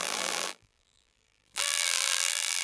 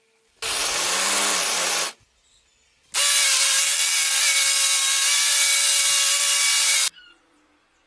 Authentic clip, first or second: second